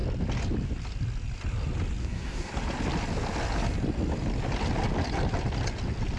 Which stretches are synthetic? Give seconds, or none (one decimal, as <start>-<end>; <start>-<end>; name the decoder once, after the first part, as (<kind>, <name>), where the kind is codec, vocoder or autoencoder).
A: 2.0-2.5 (codec, SNAC)